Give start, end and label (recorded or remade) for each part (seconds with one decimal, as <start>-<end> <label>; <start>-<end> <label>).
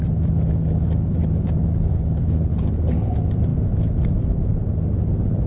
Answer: 0.0-1.9 recorded; 1.9-2.7 remade; 2.7-5.5 recorded